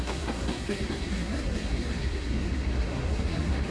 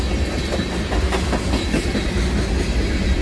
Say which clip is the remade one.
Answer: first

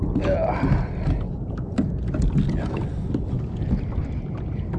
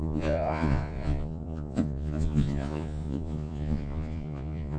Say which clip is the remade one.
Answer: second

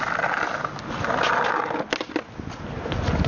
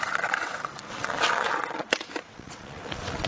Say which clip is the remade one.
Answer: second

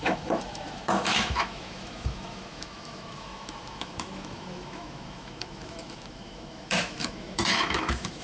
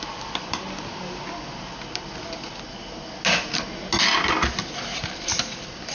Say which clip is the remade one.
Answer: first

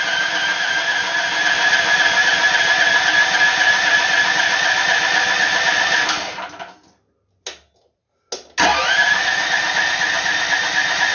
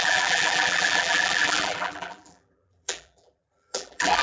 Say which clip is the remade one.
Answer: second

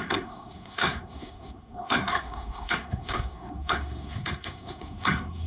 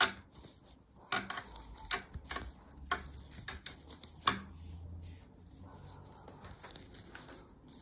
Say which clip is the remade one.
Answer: first